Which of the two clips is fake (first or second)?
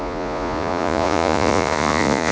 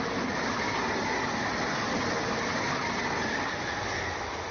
first